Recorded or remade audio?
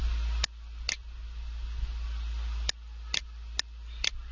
recorded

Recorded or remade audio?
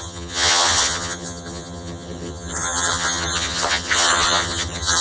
remade